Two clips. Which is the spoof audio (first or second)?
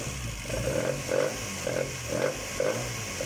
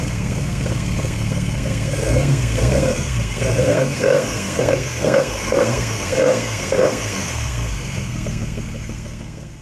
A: second